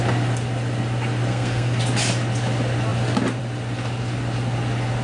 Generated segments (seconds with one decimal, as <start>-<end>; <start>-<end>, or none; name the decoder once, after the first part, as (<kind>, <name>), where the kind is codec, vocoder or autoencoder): 1.3-1.8 (codec, SNAC)